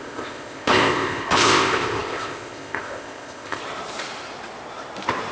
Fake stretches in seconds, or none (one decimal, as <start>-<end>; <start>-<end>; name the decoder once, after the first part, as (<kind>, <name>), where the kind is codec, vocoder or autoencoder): 0.0-3.6 (codec, ZipCodec)